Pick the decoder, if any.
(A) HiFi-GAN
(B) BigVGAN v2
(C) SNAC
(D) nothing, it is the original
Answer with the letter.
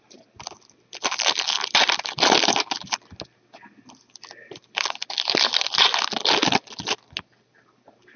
D